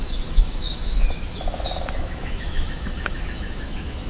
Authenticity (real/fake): fake